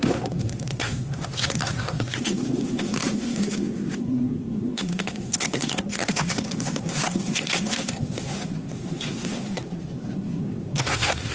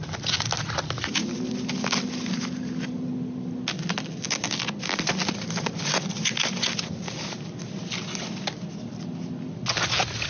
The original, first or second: second